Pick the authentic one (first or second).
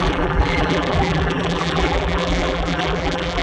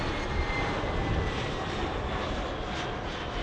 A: second